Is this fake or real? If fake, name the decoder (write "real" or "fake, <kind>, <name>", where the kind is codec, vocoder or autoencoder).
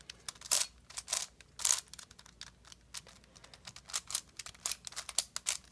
real